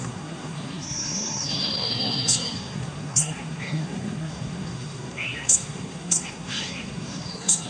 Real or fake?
fake